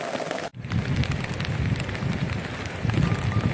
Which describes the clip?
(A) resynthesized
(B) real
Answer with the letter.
B